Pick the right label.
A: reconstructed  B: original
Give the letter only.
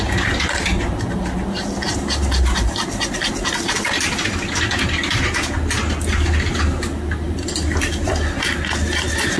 B